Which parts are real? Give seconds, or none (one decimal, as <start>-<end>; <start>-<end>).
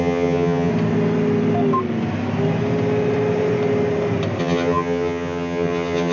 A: 0.7-4.4